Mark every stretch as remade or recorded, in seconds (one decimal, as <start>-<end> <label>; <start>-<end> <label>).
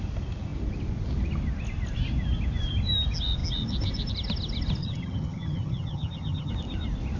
0.0-4.8 recorded; 4.8-6.5 remade; 6.5-7.2 recorded